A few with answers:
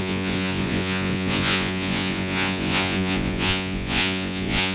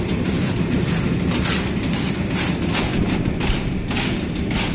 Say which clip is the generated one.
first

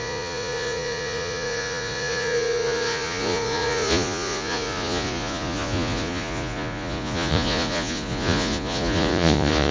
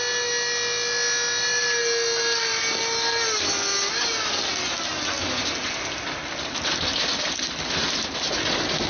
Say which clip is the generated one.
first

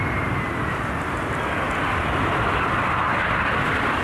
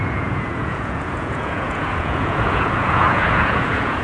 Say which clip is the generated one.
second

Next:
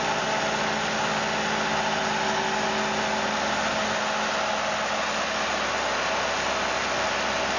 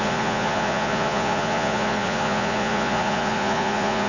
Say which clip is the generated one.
second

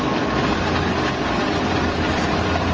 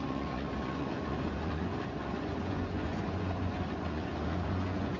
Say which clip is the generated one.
second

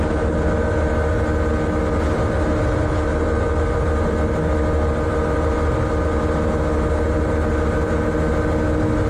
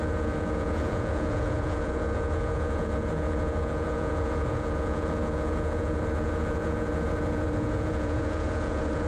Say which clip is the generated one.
second